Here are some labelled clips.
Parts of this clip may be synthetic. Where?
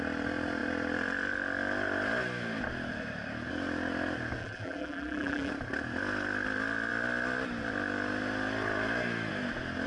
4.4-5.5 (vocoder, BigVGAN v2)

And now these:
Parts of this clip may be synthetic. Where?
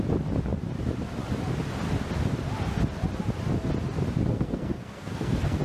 4.3-5.6 (codec, SNAC)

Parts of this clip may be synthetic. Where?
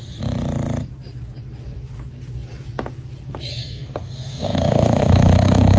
3.5-5.8 (codec, DAC)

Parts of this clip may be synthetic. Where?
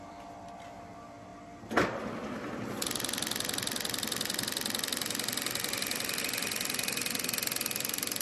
none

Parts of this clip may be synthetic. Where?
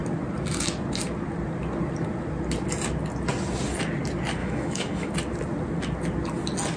4.4-5.1 (autoencoder, DAC-VAE)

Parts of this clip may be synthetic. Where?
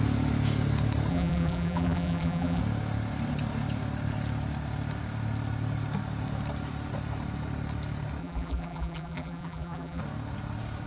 1.1-2.6 (vocoder, BigVGAN v2); 8.2-10.0